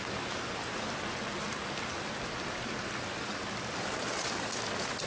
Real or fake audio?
real